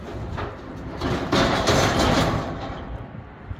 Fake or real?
real